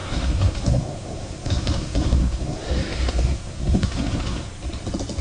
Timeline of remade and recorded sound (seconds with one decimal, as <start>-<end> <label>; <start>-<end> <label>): 0.0-4.5 remade; 4.5-5.2 recorded